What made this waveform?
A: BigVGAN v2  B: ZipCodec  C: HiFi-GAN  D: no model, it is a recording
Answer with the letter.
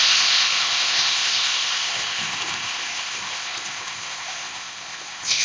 B